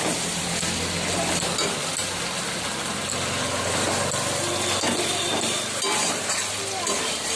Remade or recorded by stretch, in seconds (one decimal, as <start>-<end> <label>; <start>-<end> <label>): 0.0-7.4 recorded